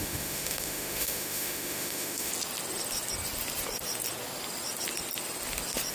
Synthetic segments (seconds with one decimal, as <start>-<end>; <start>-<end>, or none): 0.0-2.3